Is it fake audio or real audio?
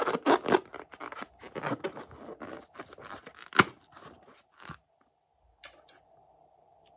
real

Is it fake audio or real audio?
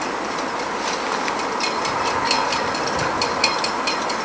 real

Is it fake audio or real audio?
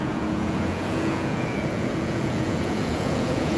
fake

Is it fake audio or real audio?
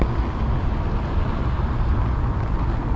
real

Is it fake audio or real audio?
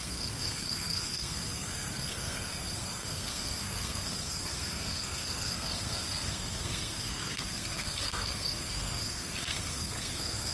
fake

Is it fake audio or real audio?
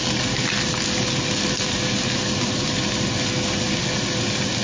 real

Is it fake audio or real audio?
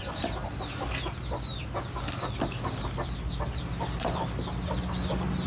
real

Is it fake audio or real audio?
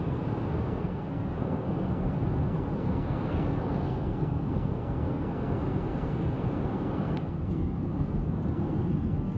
fake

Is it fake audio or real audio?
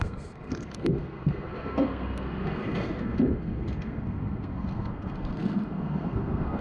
fake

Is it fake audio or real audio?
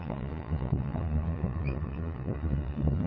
fake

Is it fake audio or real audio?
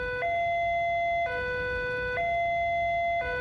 real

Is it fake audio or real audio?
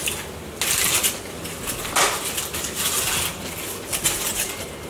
real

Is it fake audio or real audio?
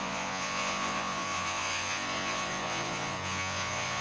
fake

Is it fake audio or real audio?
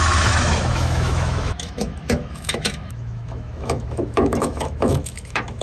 fake